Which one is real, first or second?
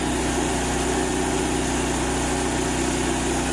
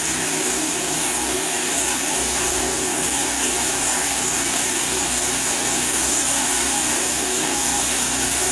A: first